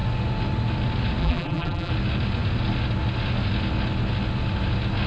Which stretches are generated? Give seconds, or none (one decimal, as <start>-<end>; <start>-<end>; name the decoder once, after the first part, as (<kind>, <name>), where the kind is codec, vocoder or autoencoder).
1.2-1.9 (vocoder, BigVGAN v2)

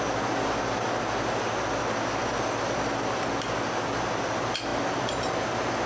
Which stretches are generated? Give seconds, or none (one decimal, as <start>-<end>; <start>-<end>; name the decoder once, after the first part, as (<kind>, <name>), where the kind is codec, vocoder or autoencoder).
2.2-3.3 (vocoder, BigVGAN v2); 4.7-5.3

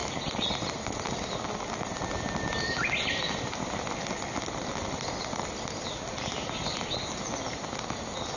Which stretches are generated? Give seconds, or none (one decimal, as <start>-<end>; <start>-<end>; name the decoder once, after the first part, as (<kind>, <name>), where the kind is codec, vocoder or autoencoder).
none

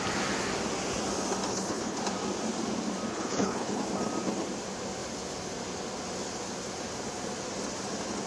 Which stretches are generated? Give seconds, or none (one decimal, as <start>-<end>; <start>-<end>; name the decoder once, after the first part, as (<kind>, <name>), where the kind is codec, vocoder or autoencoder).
1.5-2.0 (codec, HILCodec); 3.1-3.8

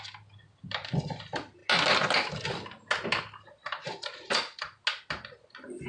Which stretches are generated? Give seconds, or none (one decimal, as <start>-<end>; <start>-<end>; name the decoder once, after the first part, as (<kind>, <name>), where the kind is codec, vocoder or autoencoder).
none

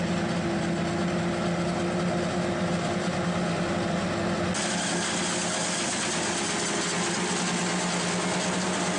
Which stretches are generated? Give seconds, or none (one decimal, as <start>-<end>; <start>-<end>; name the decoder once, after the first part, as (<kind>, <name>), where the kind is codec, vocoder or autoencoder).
none

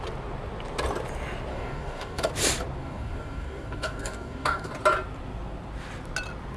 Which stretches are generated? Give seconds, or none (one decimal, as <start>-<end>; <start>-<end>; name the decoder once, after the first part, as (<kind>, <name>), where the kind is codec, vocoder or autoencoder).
1.5-2.3 (codec, DAC); 2.8-4.7